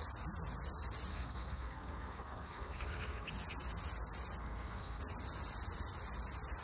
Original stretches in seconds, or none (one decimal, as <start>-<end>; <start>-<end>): 0.0-1.1; 3.3-4.4; 5.0-6.6

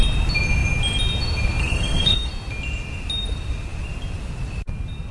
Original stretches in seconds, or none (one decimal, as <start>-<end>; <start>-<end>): 0.0-1.6; 2.3-5.1

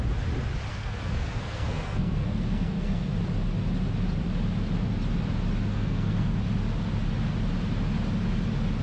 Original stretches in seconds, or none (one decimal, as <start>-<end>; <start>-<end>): 0.0-0.7; 3.1-5.7; 6.4-8.8

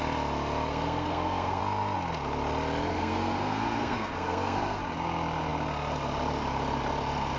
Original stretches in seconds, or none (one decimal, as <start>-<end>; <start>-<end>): 0.0-0.7; 1.6-2.9; 4.8-7.4

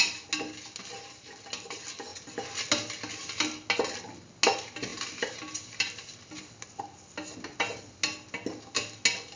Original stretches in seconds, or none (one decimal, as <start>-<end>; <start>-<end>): 0.0-9.4

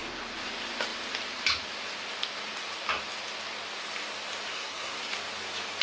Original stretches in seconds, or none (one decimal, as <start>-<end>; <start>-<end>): 0.0-4.5; 5.1-5.8